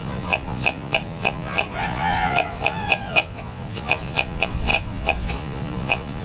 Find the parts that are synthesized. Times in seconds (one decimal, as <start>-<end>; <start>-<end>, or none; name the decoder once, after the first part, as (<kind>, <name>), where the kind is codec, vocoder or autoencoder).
0.0-6.2 (vocoder, Vocos)